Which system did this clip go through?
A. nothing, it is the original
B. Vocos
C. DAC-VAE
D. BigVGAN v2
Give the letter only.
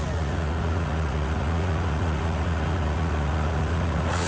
B